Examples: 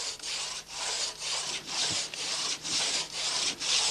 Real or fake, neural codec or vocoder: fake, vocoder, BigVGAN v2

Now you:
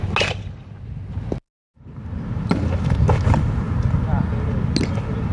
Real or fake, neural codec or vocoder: real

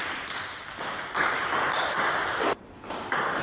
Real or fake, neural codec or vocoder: fake, vocoder, BigVGAN v2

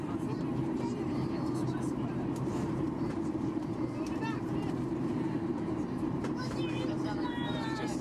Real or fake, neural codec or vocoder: fake, vocoder, BigVGAN v2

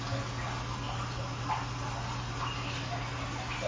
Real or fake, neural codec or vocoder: real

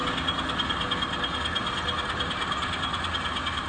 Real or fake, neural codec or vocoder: real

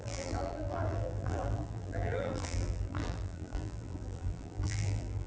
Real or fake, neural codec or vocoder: fake, vocoder, BigVGAN v2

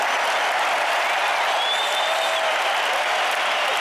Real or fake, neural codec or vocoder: real